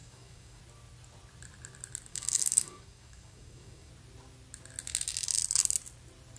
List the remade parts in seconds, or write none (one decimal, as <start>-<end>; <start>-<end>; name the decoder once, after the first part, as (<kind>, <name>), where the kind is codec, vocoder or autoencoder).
0.0-0.6 (codec, DAC); 2.1-3.9